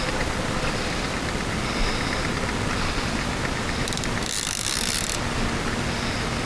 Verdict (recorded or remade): recorded